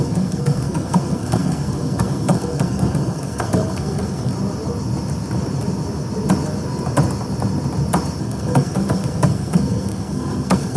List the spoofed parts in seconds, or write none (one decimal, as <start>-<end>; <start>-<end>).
0.0-4.3; 8.2-10.8